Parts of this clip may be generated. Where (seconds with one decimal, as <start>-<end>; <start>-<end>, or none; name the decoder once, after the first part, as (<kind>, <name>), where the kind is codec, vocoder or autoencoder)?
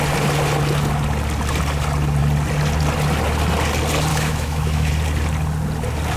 4.1-4.9 (autoencoder, DAC-VAE)